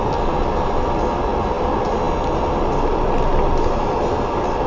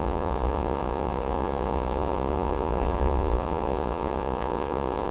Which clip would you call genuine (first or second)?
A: first